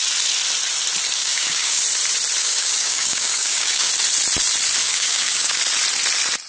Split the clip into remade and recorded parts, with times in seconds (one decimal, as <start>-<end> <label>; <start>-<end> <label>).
0.0-1.2 recorded; 1.2-1.8 remade; 1.8-2.4 recorded; 2.4-3.9 remade; 3.9-4.8 recorded; 4.8-5.6 remade; 5.6-6.5 recorded

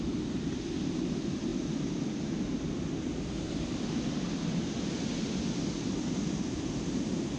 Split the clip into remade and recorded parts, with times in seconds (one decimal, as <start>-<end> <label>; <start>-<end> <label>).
0.0-7.4 recorded